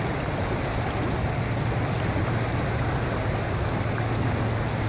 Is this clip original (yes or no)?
yes